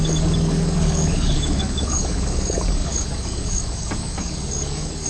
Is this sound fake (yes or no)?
yes